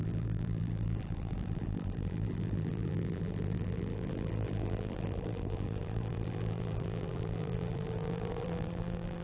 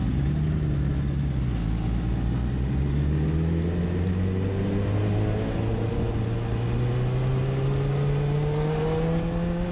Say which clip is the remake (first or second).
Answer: first